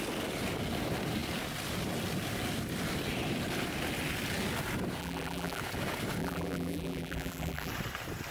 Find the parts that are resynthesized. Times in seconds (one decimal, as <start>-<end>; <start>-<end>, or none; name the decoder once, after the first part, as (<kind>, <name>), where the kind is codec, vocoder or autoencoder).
5.0-5.6 (vocoder, BigVGAN v2); 6.2-7.7